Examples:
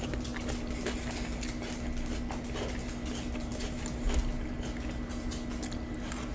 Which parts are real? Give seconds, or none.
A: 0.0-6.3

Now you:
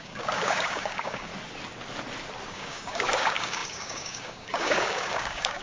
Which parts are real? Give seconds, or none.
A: 1.3-2.5

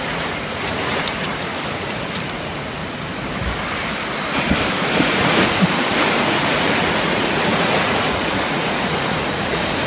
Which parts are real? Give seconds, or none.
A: 2.8-4.7

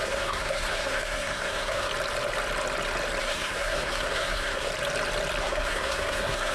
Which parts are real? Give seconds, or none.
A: 1.9-3.2; 4.7-5.4

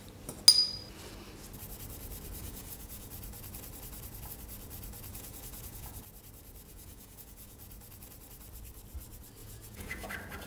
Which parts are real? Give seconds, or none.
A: 0.0-2.4; 3.1-5.1; 6.0-6.7; 7.6-9.4; 10.1-10.5

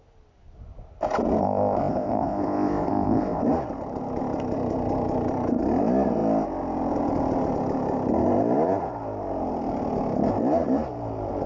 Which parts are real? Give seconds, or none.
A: 0.0-1.4; 3.4-11.5

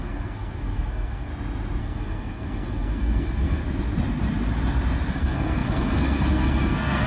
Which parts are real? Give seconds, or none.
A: 1.3-1.8; 3.6-5.1

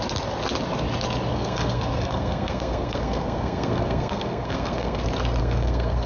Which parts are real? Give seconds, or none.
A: 0.0-1.3; 5.0-5.4